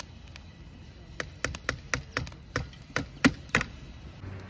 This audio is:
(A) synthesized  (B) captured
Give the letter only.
B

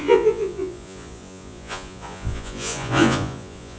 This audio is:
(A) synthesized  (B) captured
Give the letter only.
A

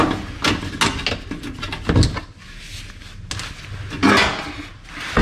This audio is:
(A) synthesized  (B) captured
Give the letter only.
B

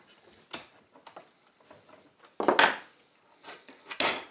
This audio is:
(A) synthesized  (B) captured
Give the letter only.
B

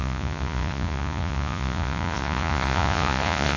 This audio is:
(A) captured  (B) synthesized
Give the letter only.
B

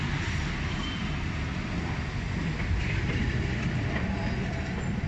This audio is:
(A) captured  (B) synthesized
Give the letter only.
A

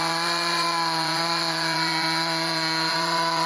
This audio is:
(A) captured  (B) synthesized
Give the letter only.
B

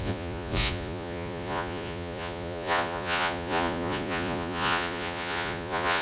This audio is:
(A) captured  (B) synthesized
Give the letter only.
B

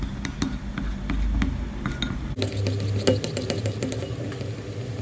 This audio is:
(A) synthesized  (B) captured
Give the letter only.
B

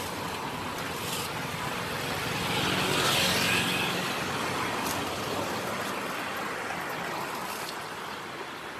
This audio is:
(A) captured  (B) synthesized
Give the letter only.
A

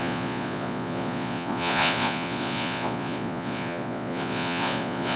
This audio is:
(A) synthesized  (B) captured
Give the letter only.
A